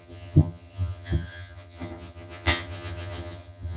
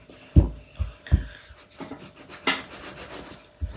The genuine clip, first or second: second